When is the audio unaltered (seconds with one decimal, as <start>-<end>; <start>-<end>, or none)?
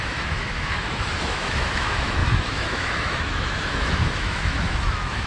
none